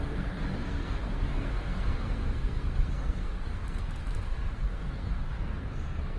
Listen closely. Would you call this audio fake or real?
fake